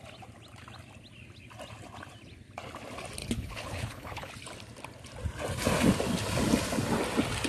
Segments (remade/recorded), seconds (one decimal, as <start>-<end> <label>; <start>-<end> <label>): 0.0-3.2 recorded; 3.2-4.3 remade; 4.3-7.5 recorded